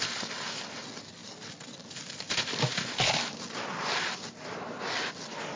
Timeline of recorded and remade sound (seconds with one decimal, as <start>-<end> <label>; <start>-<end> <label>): 0.0-1.2 recorded; 1.2-4.4 remade; 4.4-5.6 recorded